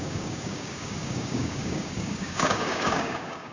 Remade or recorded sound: remade